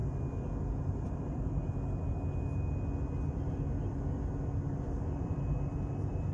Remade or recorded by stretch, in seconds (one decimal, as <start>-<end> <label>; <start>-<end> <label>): 0.0-1.1 recorded; 1.1-1.6 remade; 1.6-4.7 recorded; 4.7-6.3 remade